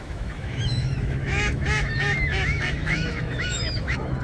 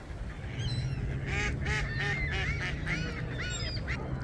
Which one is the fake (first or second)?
first